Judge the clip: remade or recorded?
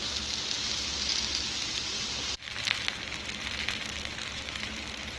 recorded